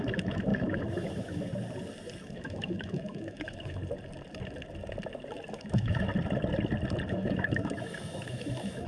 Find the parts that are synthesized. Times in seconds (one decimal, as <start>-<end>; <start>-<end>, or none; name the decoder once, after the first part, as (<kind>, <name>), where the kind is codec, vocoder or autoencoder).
0.0-1.5 (autoencoder, DAC-VAE); 2.2-3.8; 5.5-6.1; 7.1-8.9